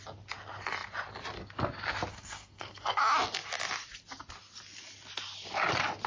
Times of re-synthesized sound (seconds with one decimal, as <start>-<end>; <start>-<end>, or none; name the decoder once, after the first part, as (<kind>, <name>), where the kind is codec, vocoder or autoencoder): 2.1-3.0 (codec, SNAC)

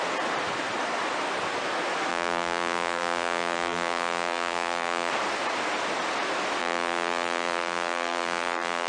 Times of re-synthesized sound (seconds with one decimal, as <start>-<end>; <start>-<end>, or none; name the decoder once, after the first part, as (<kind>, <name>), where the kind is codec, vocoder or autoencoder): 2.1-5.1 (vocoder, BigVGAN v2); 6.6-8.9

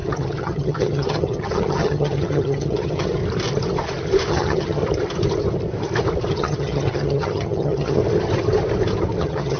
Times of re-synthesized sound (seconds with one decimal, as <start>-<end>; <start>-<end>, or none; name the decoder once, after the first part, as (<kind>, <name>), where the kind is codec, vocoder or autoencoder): 0.0-3.2 (vocoder, HiFi-GAN); 4.3-4.8; 6.3-8.0; 9.2-9.6

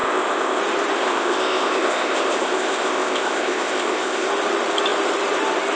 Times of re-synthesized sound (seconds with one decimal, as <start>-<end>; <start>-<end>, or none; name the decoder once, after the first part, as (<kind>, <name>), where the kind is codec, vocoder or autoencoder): 0.0-0.6 (codec, ZipCodec); 1.0-4.3